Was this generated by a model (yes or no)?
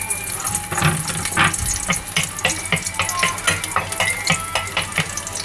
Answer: no